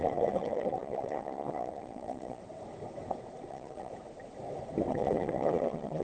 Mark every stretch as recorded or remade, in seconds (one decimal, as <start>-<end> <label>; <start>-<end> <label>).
0.0-2.4 remade; 2.4-3.5 recorded; 3.5-3.9 remade; 3.9-4.9 recorded; 4.9-6.0 remade